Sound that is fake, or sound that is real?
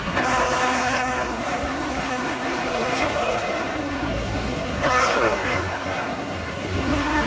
fake